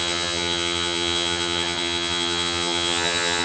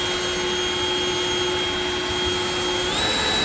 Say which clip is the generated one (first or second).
first